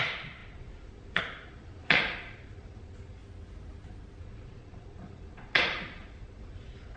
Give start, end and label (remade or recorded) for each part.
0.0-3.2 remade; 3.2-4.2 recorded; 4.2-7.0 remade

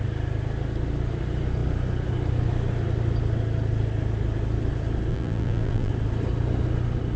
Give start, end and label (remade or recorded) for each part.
0.0-5.1 recorded; 5.1-5.9 remade; 5.9-7.2 recorded

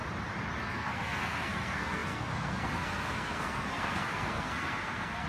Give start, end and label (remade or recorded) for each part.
0.0-0.6 recorded; 0.6-5.3 remade

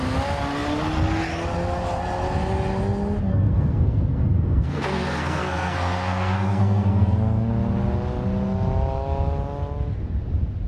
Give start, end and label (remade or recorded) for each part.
0.0-3.3 recorded; 3.3-7.5 remade; 7.5-10.7 recorded

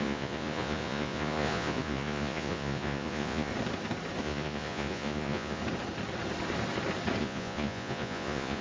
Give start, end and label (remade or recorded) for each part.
0.0-3.5 remade; 3.5-4.2 recorded; 4.2-5.6 remade; 5.6-7.2 recorded; 7.2-8.6 remade